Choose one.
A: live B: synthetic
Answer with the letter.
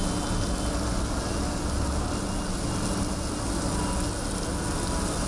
A